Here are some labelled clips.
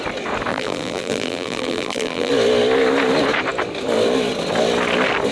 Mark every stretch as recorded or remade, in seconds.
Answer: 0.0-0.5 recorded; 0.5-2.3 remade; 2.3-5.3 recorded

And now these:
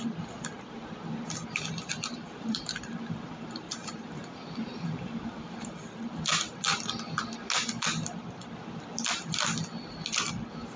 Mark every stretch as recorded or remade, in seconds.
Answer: 0.0-1.9 recorded; 1.9-5.8 remade; 5.8-6.7 recorded; 6.7-7.5 remade; 7.5-10.8 recorded

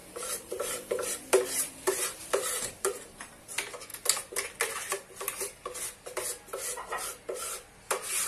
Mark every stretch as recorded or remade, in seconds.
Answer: 0.0-3.4 remade; 3.4-8.3 recorded

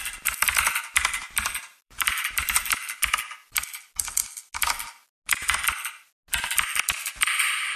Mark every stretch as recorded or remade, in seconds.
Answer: 0.0-1.2 recorded; 1.2-2.6 remade; 2.6-7.8 recorded